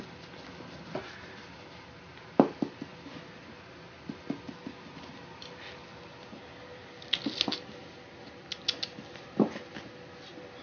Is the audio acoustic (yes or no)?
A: yes